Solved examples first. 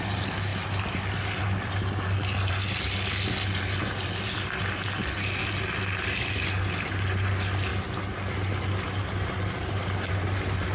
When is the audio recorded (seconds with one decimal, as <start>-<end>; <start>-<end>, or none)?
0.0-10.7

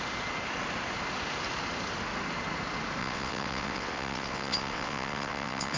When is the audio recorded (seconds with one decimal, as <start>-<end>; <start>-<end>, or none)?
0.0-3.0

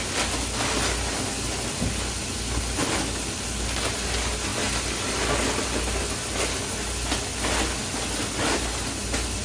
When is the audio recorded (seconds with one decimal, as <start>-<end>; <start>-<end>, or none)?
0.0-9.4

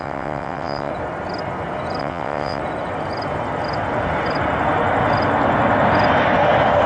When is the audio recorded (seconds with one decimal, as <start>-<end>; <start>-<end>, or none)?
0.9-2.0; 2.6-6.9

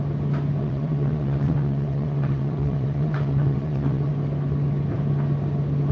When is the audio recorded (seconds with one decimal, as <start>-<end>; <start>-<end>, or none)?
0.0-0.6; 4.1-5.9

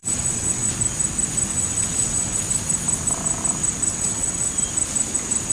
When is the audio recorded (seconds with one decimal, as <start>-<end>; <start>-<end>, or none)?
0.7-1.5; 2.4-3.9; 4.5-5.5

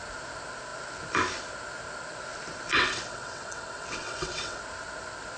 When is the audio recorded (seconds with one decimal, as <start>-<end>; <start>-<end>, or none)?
0.0-2.7; 4.6-5.4

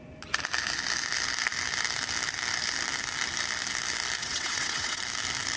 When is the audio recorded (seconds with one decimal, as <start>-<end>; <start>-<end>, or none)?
0.0-4.2; 5.0-5.6